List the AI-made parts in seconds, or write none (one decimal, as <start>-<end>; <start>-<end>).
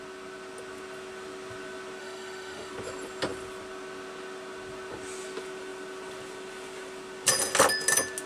2.0-2.7